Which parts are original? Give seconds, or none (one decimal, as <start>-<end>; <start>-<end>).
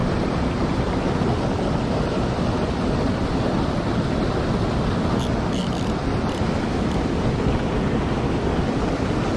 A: 0.0-9.4